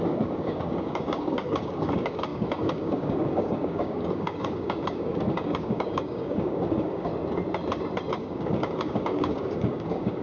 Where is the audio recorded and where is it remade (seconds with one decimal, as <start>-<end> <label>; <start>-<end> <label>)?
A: 0.0-7.1 remade; 7.1-8.1 recorded; 8.1-10.2 remade